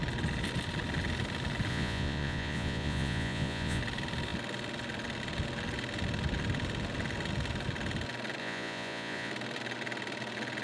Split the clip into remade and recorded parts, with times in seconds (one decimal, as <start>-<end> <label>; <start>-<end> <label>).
0.0-1.7 recorded; 1.7-3.8 remade; 3.8-8.4 recorded; 8.4-9.3 remade; 9.3-10.6 recorded